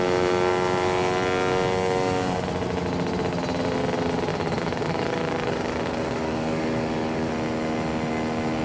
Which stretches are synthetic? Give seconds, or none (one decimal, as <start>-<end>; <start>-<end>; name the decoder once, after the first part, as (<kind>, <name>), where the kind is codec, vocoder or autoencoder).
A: 4.3-7.3 (codec, DAC)